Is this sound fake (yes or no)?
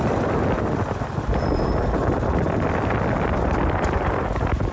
no